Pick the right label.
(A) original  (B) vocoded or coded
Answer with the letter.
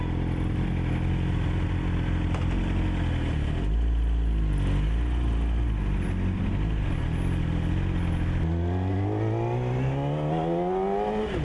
A